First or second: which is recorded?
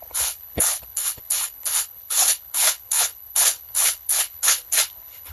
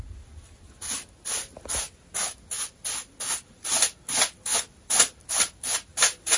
second